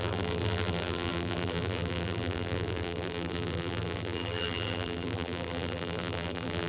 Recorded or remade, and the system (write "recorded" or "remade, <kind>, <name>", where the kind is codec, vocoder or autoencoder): remade, vocoder, BigVGAN v2